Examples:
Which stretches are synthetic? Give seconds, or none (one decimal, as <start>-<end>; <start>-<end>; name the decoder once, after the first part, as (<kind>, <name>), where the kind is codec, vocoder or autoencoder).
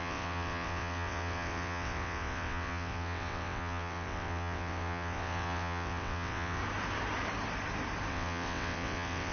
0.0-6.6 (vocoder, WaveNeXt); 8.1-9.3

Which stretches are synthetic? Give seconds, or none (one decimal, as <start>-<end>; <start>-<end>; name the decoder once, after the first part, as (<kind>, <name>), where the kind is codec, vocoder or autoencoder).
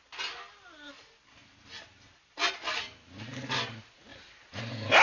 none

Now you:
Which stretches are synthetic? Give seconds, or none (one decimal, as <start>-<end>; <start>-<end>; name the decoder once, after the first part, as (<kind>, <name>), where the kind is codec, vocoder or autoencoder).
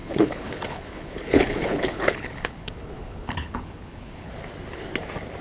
0.0-4.3 (codec, HILCodec)